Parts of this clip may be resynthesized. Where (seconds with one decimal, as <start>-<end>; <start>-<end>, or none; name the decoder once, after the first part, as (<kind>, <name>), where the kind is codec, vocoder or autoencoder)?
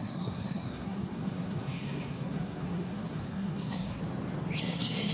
0.0-4.0 (codec, SNAC); 4.6-5.1